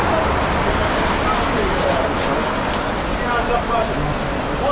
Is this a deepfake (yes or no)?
no